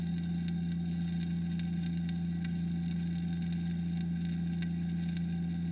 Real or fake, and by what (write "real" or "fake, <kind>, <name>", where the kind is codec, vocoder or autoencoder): real